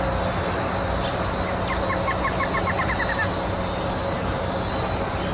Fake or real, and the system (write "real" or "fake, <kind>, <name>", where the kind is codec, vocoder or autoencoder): real